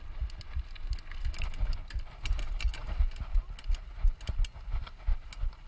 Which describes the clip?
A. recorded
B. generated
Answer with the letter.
A